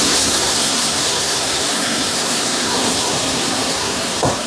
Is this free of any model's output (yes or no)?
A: no